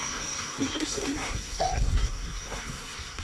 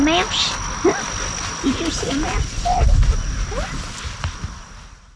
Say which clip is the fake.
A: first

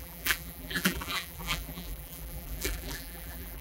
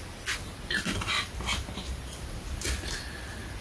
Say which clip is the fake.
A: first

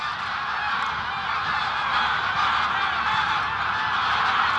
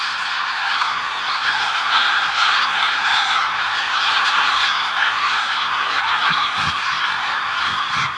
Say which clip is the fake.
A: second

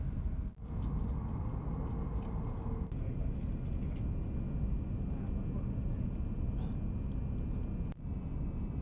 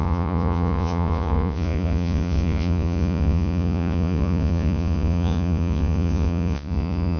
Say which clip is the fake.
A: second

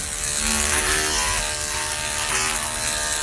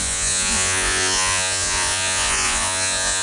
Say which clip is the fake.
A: second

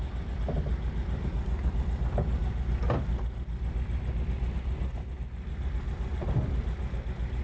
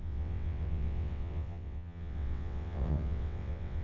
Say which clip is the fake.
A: second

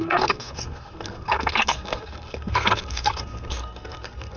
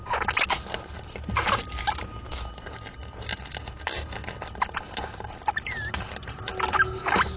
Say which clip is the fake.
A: first